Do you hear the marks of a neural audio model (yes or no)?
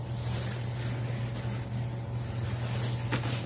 no